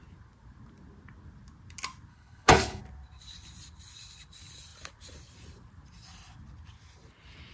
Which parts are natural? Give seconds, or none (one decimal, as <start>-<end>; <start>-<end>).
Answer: 0.0-2.1; 2.8-7.5